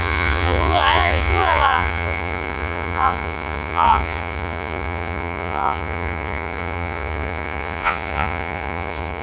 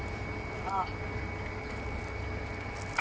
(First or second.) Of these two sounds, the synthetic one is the first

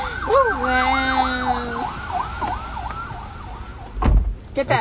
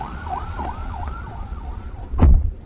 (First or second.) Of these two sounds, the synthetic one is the second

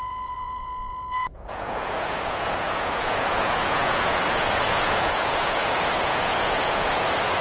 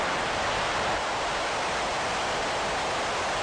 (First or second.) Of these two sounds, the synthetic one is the first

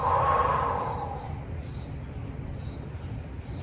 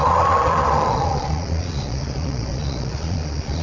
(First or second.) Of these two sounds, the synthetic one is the second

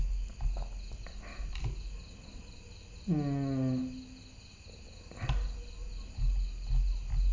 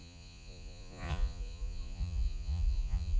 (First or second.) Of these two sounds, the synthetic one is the second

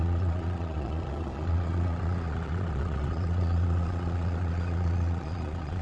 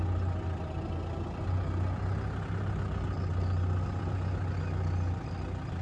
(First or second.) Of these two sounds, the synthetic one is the first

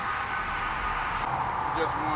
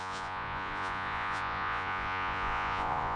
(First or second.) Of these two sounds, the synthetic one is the second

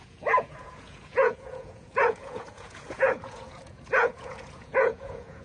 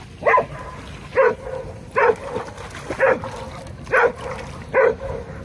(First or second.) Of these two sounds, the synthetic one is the first